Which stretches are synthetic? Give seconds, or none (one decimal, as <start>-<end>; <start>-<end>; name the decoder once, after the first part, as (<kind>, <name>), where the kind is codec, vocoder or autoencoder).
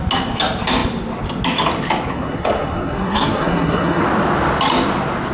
2.1-4.0 (codec, SNAC)